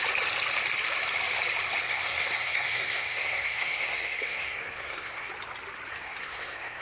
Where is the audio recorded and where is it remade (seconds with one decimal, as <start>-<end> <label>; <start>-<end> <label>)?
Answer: 0.0-1.9 recorded; 1.9-5.3 remade; 5.3-5.9 recorded; 5.9-6.8 remade